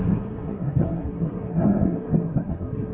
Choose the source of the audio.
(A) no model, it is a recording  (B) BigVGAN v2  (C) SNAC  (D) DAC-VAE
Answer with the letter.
C